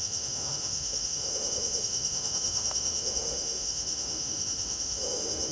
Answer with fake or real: fake